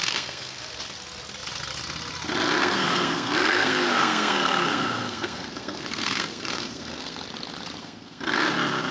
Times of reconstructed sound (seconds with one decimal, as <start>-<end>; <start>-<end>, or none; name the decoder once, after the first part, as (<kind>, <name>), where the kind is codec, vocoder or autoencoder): 0.0-0.6 (codec, SNAC); 2.6-7.2; 7.8-8.4